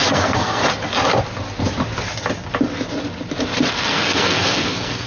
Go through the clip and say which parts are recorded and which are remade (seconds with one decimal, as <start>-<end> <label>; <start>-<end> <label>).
0.0-0.6 remade; 0.6-3.7 recorded; 3.7-5.1 remade